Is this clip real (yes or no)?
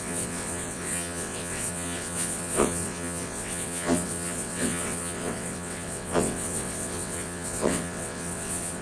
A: no